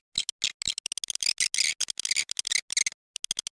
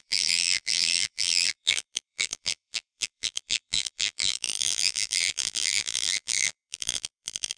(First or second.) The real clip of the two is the first